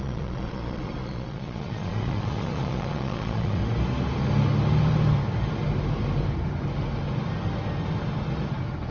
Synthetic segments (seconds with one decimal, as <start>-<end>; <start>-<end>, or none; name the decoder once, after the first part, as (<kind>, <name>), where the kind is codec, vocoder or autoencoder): 0.0-3.6 (vocoder, Vocos)